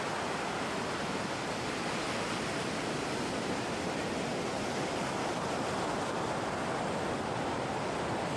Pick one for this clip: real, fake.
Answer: real